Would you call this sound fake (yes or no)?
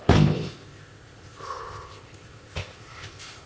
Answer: yes